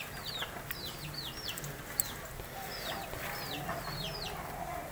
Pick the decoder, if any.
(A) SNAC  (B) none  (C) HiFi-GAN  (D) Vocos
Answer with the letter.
B